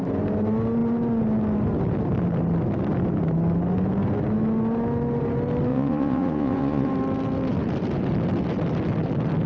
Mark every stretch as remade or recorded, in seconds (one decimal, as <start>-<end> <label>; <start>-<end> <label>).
0.0-5.7 recorded; 5.7-6.9 remade; 6.9-9.5 recorded